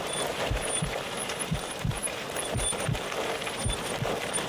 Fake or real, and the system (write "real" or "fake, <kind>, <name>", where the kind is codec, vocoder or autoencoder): fake, vocoder, BigVGAN v2